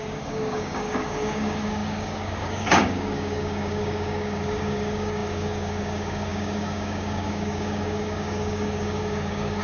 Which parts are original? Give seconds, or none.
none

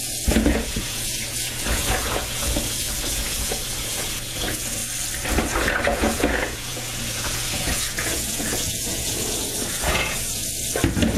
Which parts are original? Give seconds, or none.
4.8-5.4; 10.4-11.2

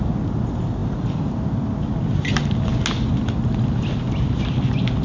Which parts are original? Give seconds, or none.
0.0-5.0

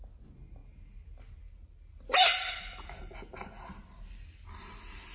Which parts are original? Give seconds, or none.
0.0-5.1

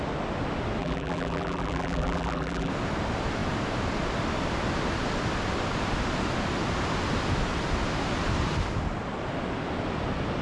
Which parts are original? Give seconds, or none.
0.0-0.8; 2.7-10.4